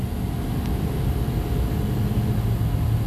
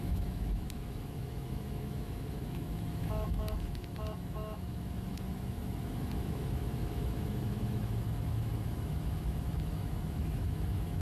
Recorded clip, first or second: first